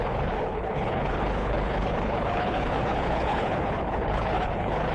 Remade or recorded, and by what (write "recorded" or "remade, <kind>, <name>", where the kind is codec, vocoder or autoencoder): remade, codec, HILCodec